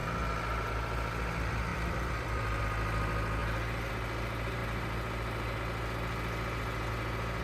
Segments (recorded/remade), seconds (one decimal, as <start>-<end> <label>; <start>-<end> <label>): 0.0-1.7 recorded; 1.7-2.6 remade; 2.6-7.4 recorded